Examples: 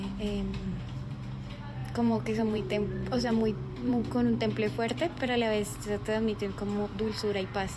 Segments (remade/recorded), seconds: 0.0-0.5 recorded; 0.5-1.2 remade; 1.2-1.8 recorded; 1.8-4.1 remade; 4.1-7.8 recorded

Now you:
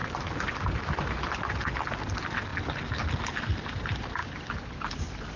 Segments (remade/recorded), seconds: 0.0-2.0 recorded; 2.0-2.5 remade; 2.5-3.6 recorded; 3.6-5.4 remade